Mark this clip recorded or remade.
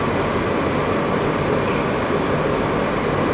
recorded